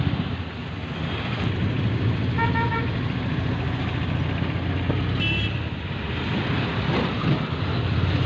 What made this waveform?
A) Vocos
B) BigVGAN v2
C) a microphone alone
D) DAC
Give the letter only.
C